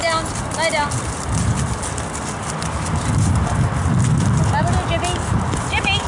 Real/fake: real